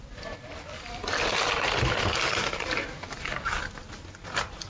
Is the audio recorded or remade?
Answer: recorded